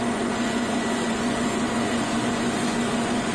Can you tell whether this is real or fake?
fake